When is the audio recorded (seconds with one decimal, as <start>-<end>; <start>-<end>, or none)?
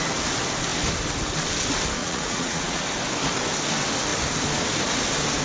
0.0-2.0; 2.8-5.4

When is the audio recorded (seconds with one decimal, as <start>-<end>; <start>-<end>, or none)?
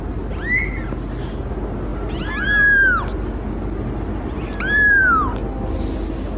0.0-6.4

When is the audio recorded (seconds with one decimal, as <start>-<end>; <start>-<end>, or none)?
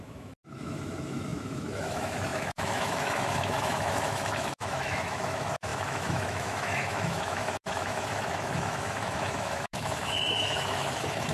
none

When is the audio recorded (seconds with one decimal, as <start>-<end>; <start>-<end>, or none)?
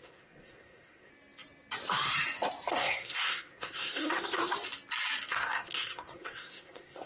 1.1-2.7; 4.4-5.3